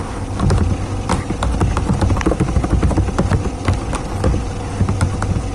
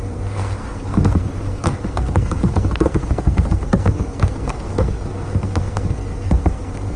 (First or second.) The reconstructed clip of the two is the second